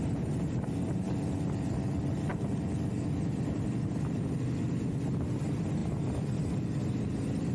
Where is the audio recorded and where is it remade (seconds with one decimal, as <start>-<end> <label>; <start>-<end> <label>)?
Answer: 0.0-2.3 recorded; 2.3-3.0 remade; 3.0-7.5 recorded